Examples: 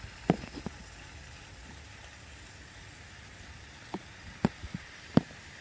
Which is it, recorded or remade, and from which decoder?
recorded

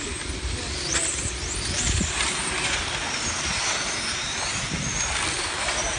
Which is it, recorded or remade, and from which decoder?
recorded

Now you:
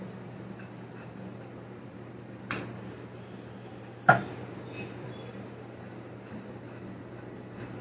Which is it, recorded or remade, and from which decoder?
recorded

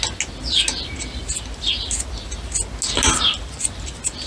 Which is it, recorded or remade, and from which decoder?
recorded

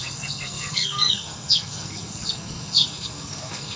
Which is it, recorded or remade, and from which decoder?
remade, codec, SNAC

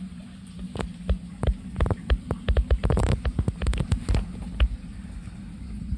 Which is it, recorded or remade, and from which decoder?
recorded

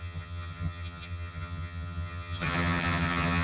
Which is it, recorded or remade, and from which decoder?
remade, vocoder, HiFi-GAN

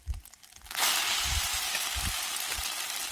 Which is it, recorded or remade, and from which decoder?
recorded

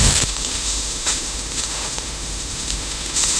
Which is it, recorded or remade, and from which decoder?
remade, autoencoder, DAC-VAE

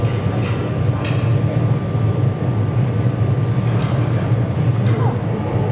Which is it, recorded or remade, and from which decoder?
recorded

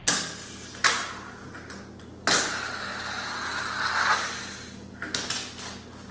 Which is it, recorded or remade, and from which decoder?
recorded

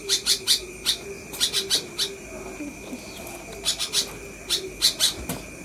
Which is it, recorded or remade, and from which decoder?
recorded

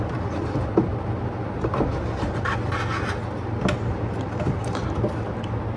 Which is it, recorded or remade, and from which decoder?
recorded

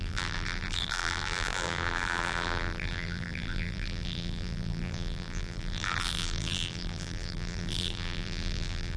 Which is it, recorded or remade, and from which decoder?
remade, vocoder, BigVGAN v2